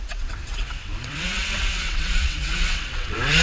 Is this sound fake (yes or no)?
yes